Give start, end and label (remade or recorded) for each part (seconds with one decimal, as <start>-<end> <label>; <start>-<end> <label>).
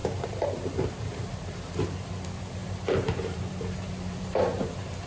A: 0.0-2.1 remade; 2.1-2.6 recorded; 2.6-5.1 remade